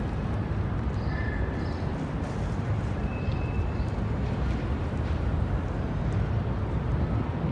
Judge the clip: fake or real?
real